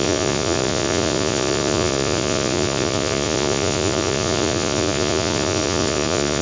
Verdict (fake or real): fake